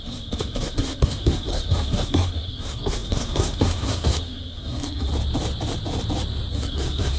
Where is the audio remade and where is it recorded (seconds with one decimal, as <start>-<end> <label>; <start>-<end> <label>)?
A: 0.0-5.1 remade; 5.1-6.5 recorded; 6.5-7.2 remade